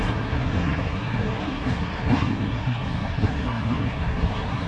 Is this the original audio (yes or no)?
no